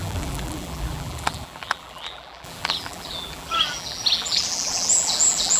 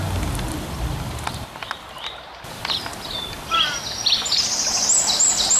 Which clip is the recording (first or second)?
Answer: second